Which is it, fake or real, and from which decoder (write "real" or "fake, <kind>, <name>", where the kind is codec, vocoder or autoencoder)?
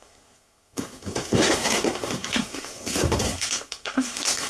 fake, codec, SNAC